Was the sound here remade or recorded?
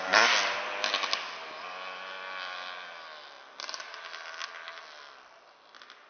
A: recorded